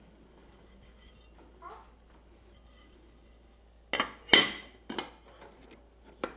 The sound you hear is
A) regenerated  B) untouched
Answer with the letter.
B